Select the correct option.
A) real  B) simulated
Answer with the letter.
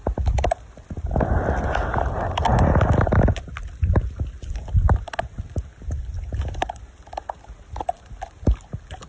A